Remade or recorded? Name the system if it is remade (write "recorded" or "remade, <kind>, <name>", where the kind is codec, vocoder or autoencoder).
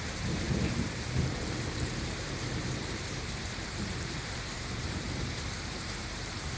remade, vocoder, BigVGAN v2